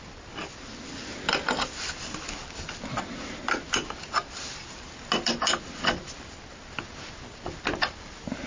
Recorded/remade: recorded